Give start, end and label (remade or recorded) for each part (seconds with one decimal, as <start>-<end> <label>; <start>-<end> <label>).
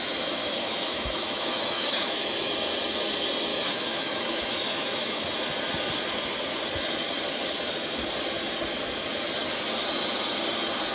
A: 0.0-0.4 recorded; 0.4-2.5 remade; 2.5-3.5 recorded; 3.5-5.3 remade; 5.3-10.9 recorded